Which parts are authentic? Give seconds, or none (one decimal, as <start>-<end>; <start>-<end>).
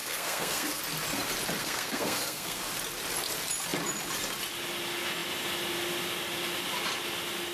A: 0.8-1.6; 2.6-7.5